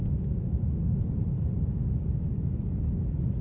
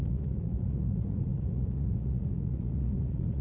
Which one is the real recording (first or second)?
first